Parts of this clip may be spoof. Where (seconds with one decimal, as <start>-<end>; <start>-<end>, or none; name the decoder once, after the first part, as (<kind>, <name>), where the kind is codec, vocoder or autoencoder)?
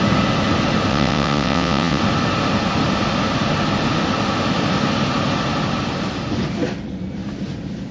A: 0.9-2.0 (vocoder, WaveNeXt)